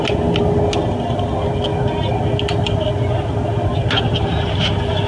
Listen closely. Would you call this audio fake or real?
real